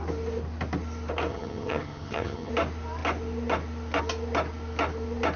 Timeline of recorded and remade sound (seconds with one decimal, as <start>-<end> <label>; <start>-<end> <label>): 0.0-1.3 recorded; 1.3-2.5 remade; 2.5-5.4 recorded